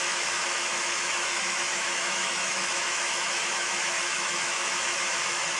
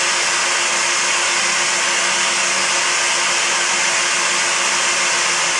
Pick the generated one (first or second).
first